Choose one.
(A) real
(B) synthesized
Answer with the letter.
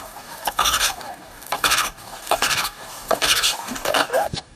B